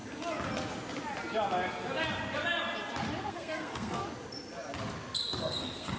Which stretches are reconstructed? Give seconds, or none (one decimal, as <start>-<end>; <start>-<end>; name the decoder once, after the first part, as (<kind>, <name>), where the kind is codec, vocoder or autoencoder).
3.3-4.0 (codec, SNAC); 5.4-6.0